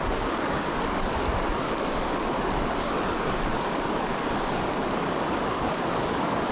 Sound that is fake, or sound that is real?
fake